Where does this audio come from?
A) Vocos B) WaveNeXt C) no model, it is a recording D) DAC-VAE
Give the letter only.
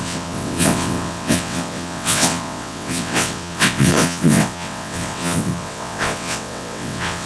B